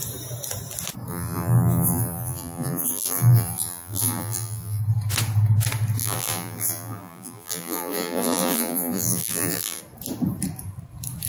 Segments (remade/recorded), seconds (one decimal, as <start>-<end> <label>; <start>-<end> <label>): 0.0-1.1 recorded; 1.1-4.8 remade; 4.8-6.0 recorded; 6.0-9.8 remade; 9.8-11.3 recorded